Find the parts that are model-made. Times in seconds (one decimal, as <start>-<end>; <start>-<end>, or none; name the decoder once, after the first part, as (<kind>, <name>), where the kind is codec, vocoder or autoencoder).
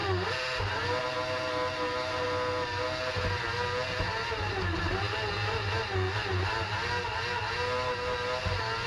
none